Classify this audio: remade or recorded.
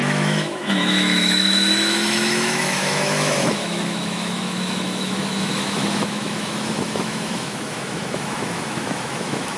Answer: remade